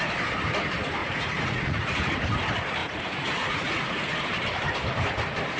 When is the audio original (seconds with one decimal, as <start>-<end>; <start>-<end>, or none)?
0.0-1.0; 1.9-2.8; 4.1-5.6